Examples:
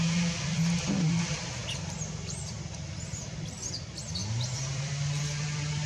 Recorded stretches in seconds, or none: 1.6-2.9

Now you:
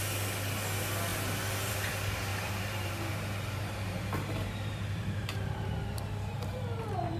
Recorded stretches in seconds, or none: 0.0-2.3; 6.6-7.2

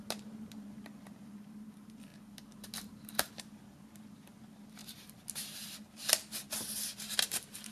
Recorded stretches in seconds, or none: 0.0-7.7

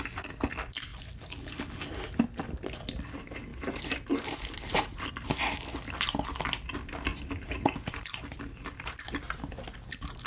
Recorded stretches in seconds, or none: 0.0-3.5; 5.1-7.1; 9.0-10.3

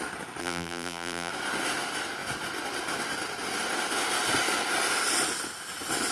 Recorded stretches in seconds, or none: 0.0-0.4; 1.3-6.1